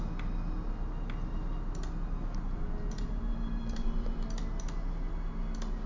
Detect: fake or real real